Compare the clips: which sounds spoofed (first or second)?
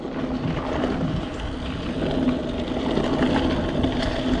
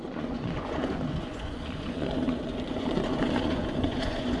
second